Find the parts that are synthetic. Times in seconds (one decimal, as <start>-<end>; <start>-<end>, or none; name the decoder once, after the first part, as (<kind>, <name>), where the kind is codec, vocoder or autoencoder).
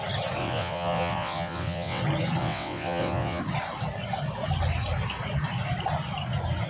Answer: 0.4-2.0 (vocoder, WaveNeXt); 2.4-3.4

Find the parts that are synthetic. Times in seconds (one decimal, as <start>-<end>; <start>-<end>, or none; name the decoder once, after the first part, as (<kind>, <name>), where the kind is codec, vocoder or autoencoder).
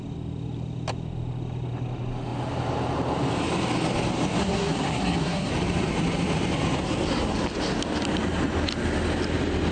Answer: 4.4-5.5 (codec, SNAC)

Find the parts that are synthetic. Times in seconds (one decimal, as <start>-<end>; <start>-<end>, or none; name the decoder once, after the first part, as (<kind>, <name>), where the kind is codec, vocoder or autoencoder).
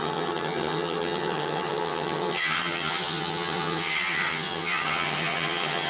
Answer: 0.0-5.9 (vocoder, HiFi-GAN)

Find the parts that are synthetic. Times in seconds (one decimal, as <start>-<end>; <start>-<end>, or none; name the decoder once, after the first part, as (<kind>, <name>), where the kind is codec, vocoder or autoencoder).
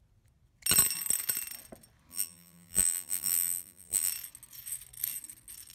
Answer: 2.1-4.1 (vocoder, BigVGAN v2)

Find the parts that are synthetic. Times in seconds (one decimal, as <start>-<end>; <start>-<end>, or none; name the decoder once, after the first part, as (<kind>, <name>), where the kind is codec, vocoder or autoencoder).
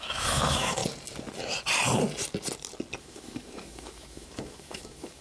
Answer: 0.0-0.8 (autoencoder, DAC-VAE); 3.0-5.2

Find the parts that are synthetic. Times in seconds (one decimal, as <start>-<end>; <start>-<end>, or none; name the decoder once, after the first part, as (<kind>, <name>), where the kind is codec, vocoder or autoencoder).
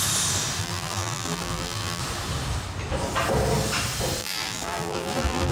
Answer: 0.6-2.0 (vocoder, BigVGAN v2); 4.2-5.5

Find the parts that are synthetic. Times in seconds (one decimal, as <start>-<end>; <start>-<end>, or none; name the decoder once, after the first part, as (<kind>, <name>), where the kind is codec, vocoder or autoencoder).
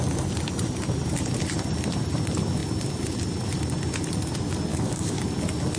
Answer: 4.7-5.2 (codec, DAC)